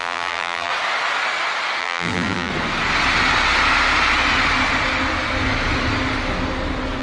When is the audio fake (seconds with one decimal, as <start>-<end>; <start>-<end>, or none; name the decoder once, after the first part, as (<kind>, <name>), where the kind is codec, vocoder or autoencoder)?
0.0-0.7 (vocoder, BigVGAN v2); 1.8-2.5